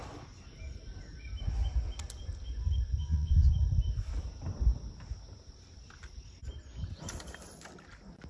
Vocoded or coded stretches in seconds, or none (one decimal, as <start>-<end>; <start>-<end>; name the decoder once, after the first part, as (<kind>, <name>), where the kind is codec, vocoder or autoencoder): 3.0-3.5 (vocoder, Vocos)